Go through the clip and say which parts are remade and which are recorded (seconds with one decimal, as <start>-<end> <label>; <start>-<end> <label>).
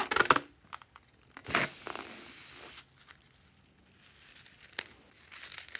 0.0-5.8 recorded